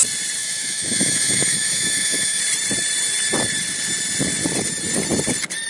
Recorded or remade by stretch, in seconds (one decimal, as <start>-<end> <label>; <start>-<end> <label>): 0.0-0.4 recorded; 0.4-2.4 remade; 2.4-5.7 recorded